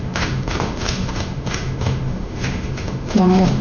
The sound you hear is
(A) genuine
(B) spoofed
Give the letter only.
B